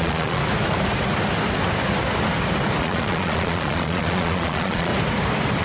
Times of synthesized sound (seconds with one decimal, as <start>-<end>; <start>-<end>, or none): 0.0-0.4; 2.8-4.9